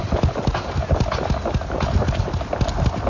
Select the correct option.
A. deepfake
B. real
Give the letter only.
B